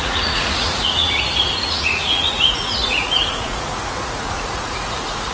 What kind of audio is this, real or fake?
fake